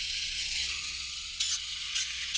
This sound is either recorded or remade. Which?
remade